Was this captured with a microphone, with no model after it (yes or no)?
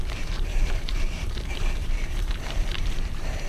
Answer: no